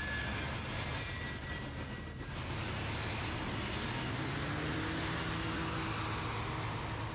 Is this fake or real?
real